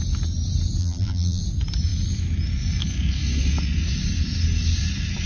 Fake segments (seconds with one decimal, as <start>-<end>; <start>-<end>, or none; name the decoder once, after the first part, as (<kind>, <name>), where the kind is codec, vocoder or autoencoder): 0.8-1.4 (vocoder, BigVGAN v2)